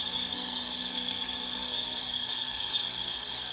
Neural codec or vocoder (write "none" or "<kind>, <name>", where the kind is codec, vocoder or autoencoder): codec, SNAC